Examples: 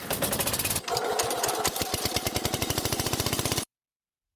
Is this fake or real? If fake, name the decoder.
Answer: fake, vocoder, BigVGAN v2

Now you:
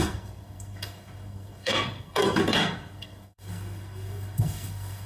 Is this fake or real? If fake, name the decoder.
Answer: fake, codec, SNAC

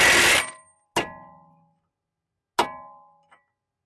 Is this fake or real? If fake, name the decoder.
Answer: real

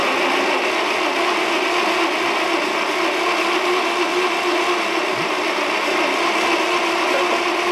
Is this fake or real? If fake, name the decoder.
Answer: real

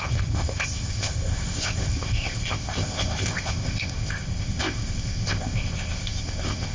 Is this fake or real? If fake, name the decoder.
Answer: fake, codec, ZipCodec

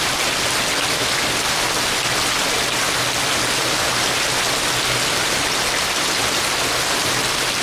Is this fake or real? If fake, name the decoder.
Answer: real